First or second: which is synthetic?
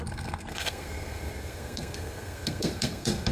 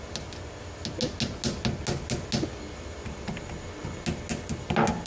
first